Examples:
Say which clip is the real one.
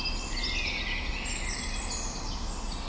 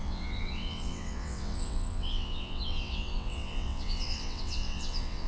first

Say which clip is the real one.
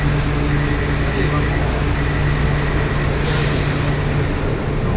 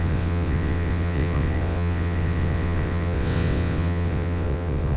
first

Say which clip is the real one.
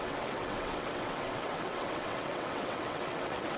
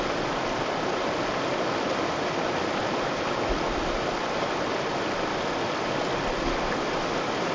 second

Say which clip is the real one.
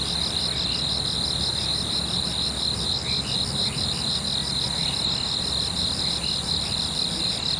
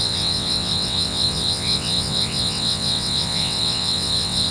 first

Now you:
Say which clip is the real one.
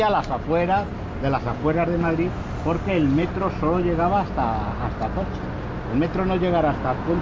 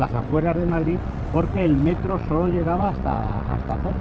first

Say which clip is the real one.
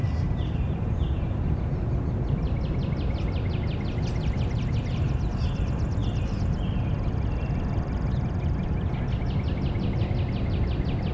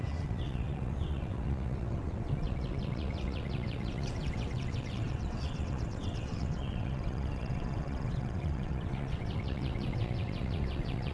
first